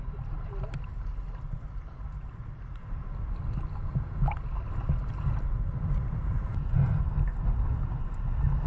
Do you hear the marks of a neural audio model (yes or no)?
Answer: no